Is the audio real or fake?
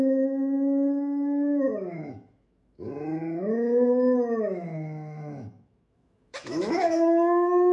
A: fake